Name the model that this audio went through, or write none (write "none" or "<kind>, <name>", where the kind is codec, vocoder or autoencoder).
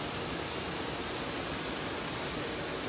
none